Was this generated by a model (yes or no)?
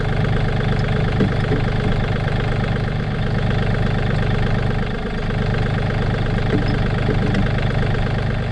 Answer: no